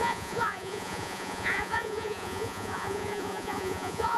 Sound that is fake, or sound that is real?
fake